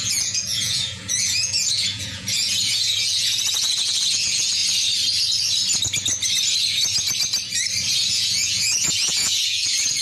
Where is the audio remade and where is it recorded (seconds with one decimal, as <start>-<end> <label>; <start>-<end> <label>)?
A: 0.0-4.6 remade; 4.6-8.1 recorded; 8.1-10.0 remade